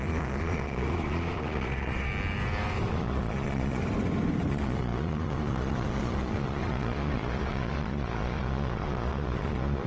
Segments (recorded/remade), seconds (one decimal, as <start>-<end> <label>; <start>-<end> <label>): 0.0-2.1 remade; 2.1-2.9 recorded; 2.9-3.8 remade; 3.8-4.5 recorded; 4.5-9.9 remade